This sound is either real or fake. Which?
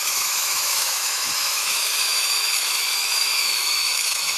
fake